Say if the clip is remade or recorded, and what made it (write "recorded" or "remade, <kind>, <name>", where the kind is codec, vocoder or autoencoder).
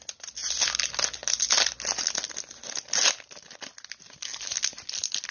recorded